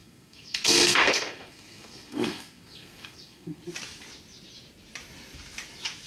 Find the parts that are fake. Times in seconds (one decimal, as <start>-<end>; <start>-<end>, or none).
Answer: 0.0-3.6